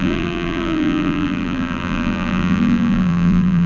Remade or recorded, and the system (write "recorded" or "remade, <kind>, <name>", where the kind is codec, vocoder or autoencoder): remade, vocoder, BigVGAN v2